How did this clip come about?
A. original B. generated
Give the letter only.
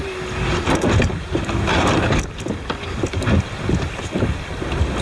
A